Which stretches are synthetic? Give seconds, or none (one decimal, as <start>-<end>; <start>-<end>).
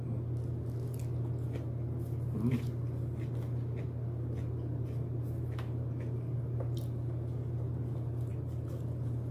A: none